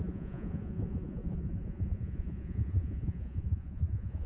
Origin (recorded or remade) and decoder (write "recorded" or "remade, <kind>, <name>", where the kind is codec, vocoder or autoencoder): remade, vocoder, Vocos